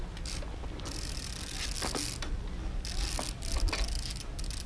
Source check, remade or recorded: recorded